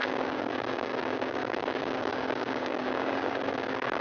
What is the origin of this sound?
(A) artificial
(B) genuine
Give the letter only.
A